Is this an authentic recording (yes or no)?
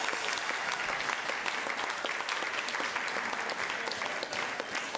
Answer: yes